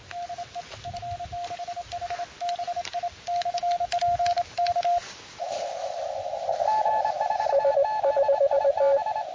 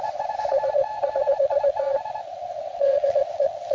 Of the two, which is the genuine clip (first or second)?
first